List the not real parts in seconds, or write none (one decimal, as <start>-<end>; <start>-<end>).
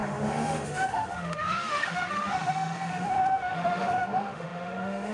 0.0-5.1